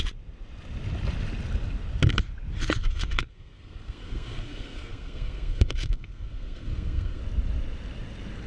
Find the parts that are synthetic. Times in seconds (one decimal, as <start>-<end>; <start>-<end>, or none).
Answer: 2.8-7.2